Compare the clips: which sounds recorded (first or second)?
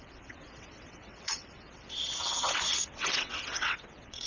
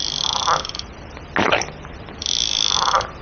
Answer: second